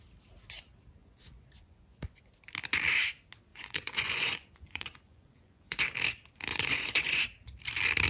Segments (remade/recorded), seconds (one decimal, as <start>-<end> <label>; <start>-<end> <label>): 0.0-1.0 recorded; 1.0-2.2 remade; 2.2-3.5 recorded; 3.5-5.8 remade; 5.8-6.5 recorded; 6.5-7.2 remade; 7.2-8.1 recorded